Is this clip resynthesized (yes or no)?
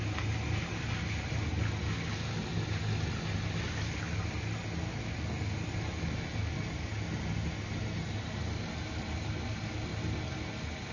no